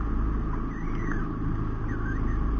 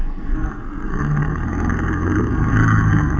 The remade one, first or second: second